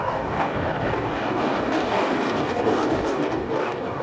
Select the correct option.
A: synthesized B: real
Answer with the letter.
A